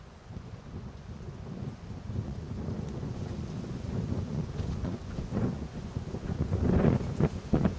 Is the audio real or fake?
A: fake